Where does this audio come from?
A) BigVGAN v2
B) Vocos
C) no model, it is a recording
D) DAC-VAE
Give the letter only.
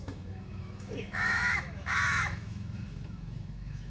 D